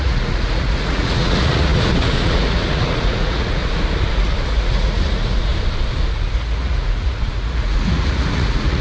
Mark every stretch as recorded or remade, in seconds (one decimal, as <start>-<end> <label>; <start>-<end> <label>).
0.0-3.6 remade; 3.6-4.1 recorded; 4.1-5.5 remade; 5.5-6.1 recorded; 6.1-8.8 remade